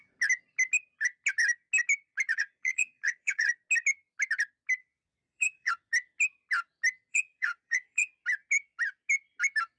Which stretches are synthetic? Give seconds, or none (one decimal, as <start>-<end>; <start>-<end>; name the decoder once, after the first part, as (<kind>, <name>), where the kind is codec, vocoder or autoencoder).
2.3-3.5 (vocoder, Vocos); 4.8-5.7; 7.1-8.1